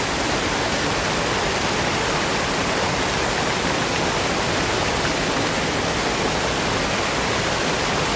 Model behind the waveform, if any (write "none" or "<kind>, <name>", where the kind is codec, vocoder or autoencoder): none